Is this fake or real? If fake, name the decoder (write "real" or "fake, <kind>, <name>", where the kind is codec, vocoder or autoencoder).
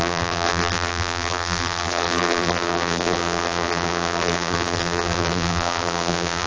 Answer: fake, vocoder, BigVGAN v2